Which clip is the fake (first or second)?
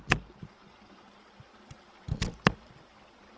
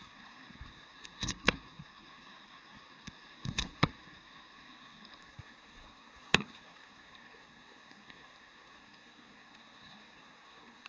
second